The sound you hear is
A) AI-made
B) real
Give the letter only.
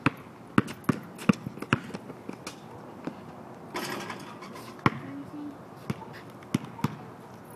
B